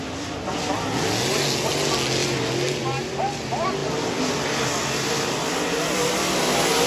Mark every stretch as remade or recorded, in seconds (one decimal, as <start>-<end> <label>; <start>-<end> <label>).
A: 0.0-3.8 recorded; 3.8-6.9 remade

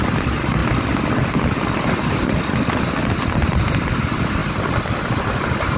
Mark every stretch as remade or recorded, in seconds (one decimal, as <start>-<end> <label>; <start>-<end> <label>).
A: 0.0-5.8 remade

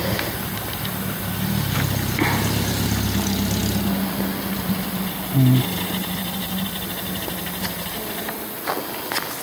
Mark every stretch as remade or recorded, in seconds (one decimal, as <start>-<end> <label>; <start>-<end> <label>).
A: 0.0-9.4 recorded

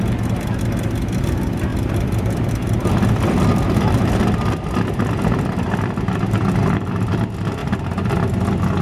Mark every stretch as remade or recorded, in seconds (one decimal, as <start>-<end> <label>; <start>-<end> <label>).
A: 0.0-1.7 recorded; 1.7-6.9 remade; 6.9-8.8 recorded